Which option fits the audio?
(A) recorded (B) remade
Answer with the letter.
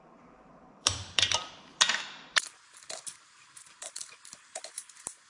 B